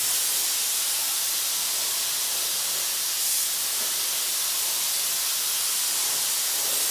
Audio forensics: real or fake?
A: real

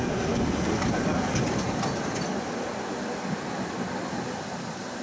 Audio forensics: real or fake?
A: real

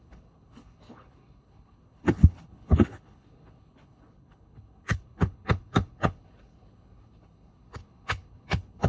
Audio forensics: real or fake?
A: fake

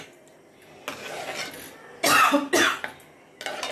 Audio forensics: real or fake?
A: real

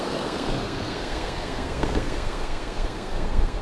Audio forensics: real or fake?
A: fake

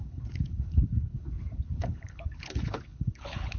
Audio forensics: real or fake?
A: fake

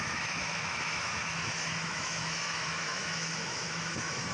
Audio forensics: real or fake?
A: fake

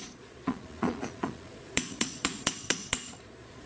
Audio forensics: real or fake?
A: fake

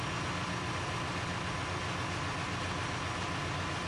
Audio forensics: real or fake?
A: real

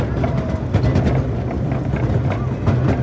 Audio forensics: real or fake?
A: real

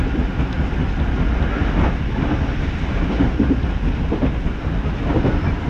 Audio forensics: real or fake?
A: real